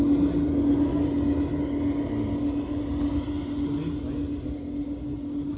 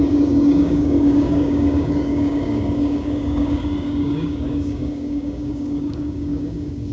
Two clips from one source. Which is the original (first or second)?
first